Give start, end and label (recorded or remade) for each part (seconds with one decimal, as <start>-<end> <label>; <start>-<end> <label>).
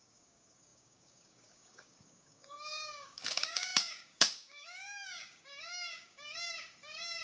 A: 0.0-7.2 remade